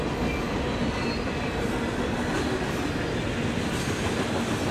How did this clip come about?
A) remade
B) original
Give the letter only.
B